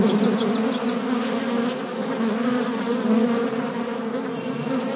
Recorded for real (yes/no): yes